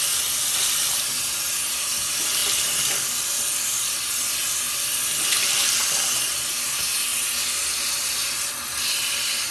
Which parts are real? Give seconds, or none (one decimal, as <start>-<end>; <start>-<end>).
0.0-9.5